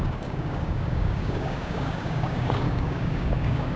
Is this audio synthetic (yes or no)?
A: yes